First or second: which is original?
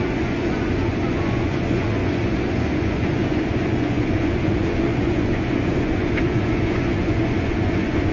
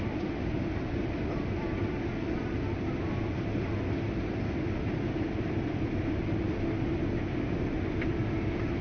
second